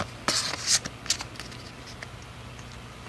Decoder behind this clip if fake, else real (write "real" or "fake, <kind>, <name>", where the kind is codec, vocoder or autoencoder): real